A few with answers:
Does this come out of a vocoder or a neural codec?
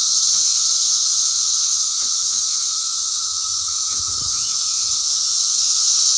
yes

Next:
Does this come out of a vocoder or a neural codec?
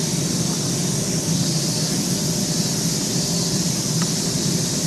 no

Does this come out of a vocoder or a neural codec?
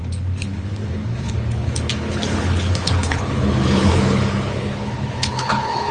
yes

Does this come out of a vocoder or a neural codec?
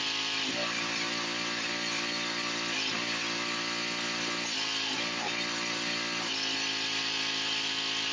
no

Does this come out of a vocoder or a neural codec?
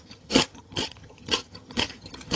yes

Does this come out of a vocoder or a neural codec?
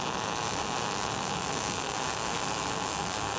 no